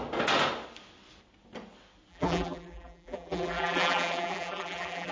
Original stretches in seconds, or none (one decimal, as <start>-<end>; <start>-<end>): 0.0-2.1